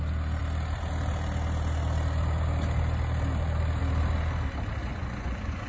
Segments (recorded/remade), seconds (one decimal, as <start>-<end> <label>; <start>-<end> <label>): 0.0-4.8 recorded; 4.8-5.7 remade